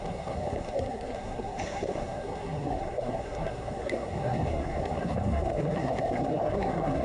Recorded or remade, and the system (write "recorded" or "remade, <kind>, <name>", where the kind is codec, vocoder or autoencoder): remade, codec, SNAC